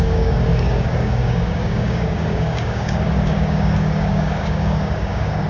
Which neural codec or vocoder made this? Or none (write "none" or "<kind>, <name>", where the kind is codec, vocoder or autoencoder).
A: codec, DAC